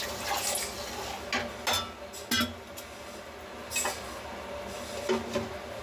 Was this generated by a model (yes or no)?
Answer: no